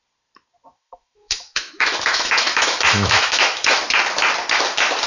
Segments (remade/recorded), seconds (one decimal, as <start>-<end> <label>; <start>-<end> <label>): 0.0-0.7 recorded; 0.7-3.8 remade; 3.8-5.1 recorded